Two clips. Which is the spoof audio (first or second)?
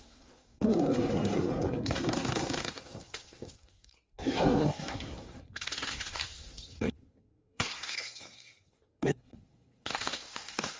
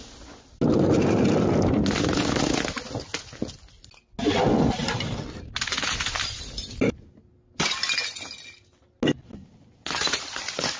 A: first